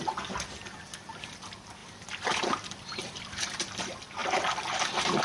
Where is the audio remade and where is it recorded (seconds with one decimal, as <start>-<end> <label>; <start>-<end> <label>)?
0.0-1.8 recorded; 1.8-3.8 remade; 3.8-4.2 recorded; 4.2-5.2 remade